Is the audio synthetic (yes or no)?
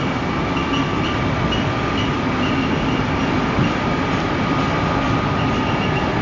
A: no